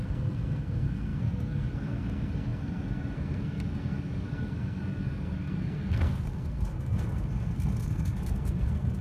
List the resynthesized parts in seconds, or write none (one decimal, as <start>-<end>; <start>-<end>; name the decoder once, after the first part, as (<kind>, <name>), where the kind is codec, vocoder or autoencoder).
0.0-9.0 (codec, SNAC)